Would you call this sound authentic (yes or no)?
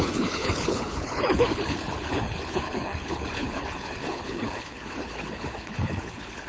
no